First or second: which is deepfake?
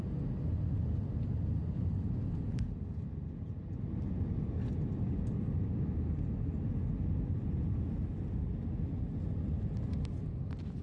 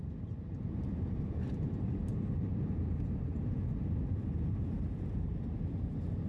second